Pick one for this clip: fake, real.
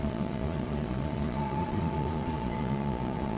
fake